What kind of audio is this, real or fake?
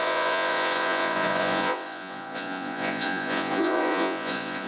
fake